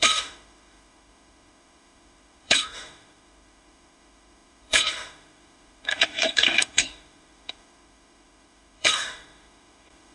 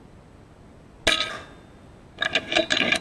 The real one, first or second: second